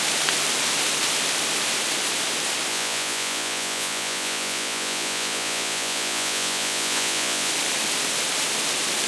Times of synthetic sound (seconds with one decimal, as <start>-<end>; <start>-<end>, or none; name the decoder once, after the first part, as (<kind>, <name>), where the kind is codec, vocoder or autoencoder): 2.7-7.5 (vocoder, Vocos)